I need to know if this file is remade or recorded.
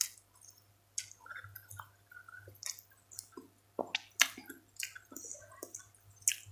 recorded